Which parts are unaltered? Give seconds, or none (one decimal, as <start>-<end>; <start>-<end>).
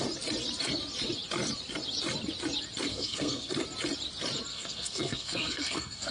0.0-2.9; 3.5-4.5